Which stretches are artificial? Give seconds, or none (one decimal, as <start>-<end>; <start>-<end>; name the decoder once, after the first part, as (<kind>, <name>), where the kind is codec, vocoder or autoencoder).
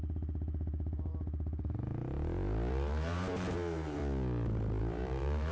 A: 0.0-1.1 (vocoder, BigVGAN v2); 2.7-4.0; 4.8-5.5